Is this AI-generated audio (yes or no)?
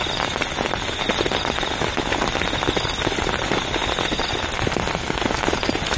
no